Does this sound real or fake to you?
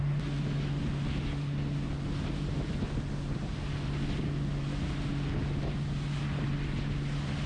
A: real